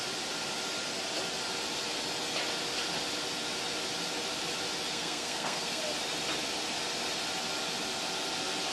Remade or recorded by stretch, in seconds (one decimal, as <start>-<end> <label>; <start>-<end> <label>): 0.0-4.9 recorded; 4.9-5.8 remade; 5.8-8.7 recorded